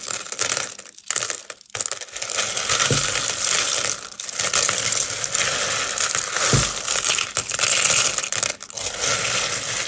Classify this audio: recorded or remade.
recorded